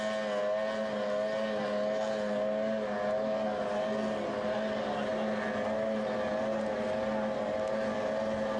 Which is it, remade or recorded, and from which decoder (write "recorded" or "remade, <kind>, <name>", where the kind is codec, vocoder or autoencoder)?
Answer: recorded